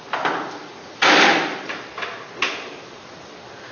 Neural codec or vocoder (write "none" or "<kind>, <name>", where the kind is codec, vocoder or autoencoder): none